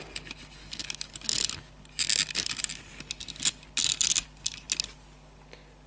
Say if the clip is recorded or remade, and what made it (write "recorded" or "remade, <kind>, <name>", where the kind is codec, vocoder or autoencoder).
recorded